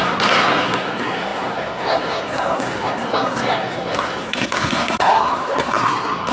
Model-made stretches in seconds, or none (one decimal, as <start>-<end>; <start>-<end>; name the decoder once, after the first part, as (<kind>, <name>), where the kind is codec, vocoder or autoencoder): 0.0-6.3 (codec, SNAC)